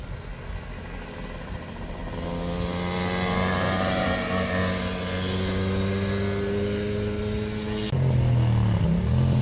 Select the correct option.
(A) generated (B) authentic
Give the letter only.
B